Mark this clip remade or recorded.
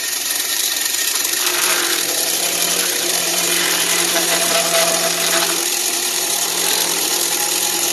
remade